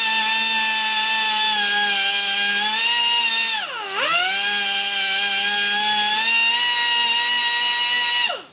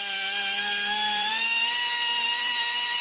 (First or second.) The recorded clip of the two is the first